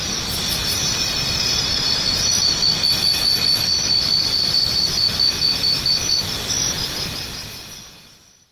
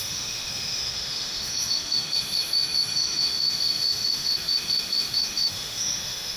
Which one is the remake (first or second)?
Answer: second